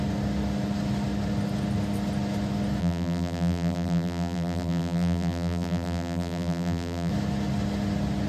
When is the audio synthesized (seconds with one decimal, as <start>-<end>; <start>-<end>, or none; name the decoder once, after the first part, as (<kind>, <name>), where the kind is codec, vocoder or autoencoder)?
2.8-7.1 (vocoder, BigVGAN v2)